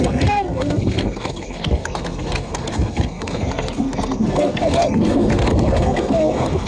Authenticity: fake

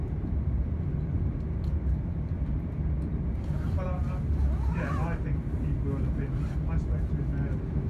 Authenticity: real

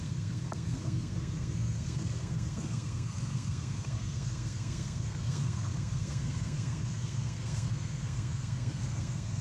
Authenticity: fake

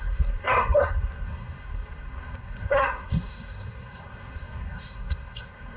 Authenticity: fake